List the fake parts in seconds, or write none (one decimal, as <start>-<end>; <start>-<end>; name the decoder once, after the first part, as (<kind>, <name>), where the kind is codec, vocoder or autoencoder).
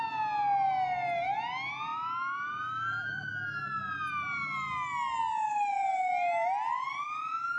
none